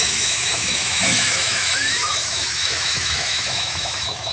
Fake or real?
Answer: fake